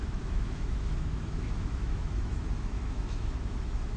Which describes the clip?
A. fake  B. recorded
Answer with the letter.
A